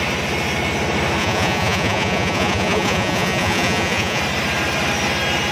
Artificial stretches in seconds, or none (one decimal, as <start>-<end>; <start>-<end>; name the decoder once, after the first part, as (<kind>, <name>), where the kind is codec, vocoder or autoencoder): 1.2-4.2 (vocoder, Vocos)